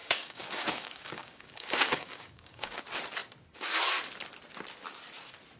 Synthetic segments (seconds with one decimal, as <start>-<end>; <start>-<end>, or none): 0.0-2.8